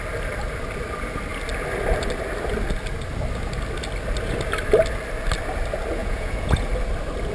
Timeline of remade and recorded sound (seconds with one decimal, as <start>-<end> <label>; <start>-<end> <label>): 0.0-6.0 recorded; 6.0-6.7 remade; 6.7-7.3 recorded